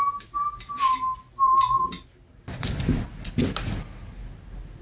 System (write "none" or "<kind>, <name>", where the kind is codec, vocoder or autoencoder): none